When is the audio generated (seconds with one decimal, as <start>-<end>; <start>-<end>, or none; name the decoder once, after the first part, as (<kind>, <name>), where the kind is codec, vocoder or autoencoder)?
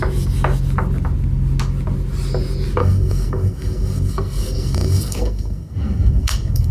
2.8-6.7 (codec, SNAC)